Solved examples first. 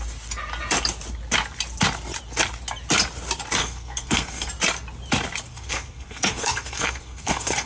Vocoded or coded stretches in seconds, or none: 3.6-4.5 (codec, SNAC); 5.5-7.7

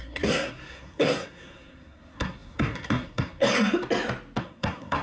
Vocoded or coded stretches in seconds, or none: 0.0-3.4 (codec, SNAC); 4.4-5.0

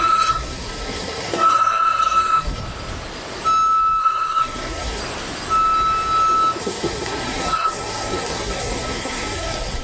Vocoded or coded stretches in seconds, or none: 0.0-2.6 (codec, SNAC); 4.0-5.0; 6.6-9.8

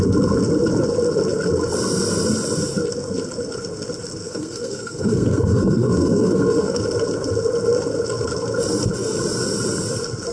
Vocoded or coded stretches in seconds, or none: 4.2-6.8 (codec, SNAC)

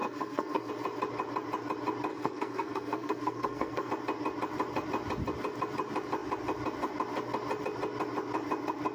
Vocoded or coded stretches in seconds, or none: 0.0-0.7 (codec, SNAC); 2.1-3.9

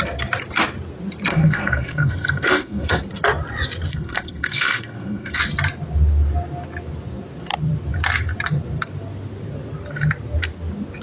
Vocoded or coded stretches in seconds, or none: 1.3-3.0 (codec, SNAC); 3.9-5.4

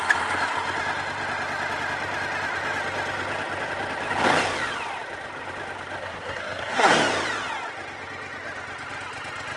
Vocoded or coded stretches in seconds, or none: 6.0-6.9 (codec, SNAC)

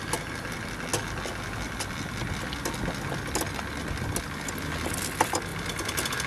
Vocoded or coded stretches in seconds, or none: none